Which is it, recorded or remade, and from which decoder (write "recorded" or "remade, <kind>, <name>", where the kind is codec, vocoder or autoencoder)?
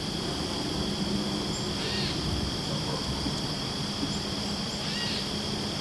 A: recorded